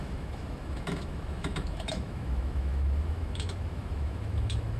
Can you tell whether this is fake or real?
fake